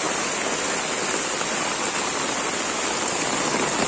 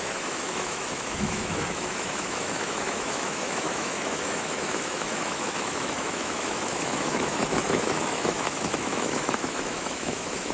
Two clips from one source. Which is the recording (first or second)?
first